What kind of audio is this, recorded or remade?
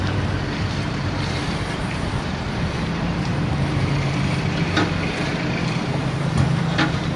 remade